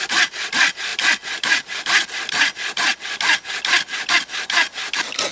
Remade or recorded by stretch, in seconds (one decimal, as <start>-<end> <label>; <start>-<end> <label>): 0.0-5.3 recorded